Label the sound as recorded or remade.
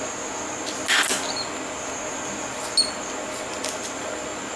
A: recorded